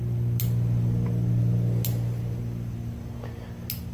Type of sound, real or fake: real